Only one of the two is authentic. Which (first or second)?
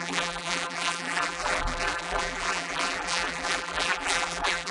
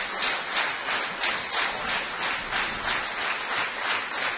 second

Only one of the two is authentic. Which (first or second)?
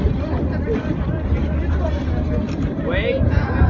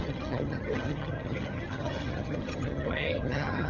first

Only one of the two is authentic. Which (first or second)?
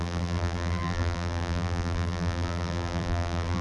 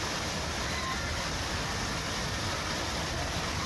second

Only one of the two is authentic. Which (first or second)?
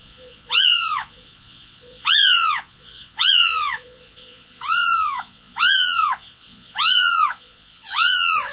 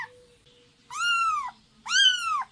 second